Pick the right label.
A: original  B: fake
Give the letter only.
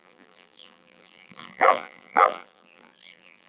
B